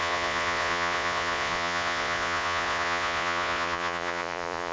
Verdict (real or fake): fake